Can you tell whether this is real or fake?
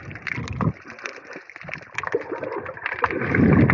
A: real